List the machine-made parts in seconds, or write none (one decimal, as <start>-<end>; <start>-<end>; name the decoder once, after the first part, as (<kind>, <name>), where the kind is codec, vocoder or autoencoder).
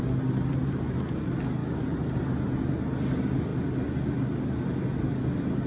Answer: 0.5-1.2 (vocoder, BigVGAN v2)